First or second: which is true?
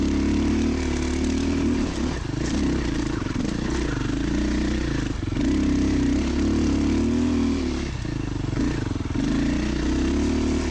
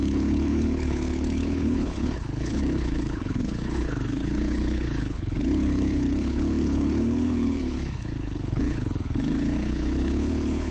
first